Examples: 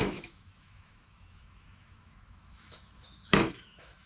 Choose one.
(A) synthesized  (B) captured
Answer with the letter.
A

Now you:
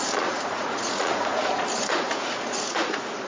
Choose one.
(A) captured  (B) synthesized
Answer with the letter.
B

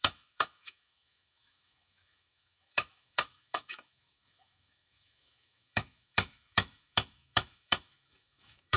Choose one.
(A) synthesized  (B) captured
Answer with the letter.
A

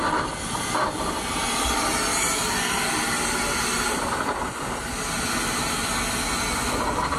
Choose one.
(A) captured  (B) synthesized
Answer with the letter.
A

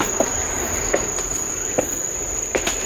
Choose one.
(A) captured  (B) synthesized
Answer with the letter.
A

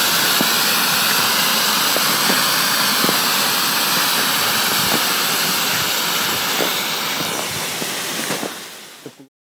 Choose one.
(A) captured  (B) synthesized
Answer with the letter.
A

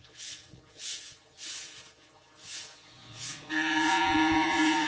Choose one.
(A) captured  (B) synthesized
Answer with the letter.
B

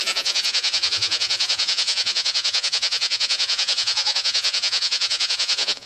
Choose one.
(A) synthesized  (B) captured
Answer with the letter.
A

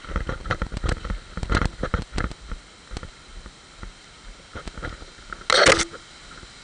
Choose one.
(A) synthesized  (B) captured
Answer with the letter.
B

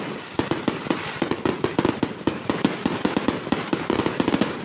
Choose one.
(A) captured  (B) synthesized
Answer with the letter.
A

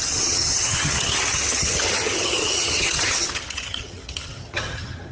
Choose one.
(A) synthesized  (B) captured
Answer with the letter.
A